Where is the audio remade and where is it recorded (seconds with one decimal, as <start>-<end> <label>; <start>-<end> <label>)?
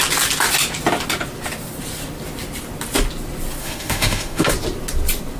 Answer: 0.0-3.6 recorded; 3.6-4.5 remade; 4.5-5.4 recorded